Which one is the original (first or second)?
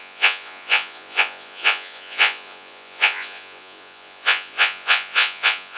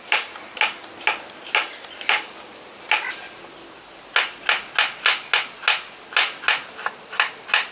second